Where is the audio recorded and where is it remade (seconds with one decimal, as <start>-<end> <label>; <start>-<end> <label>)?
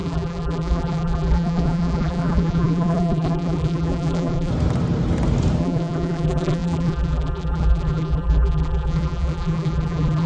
0.0-4.5 remade; 4.5-5.6 recorded; 5.6-10.3 remade